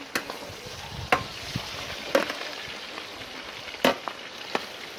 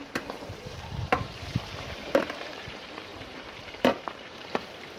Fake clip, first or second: second